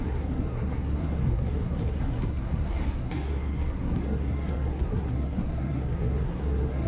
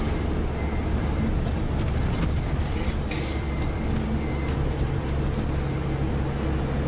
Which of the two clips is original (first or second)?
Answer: second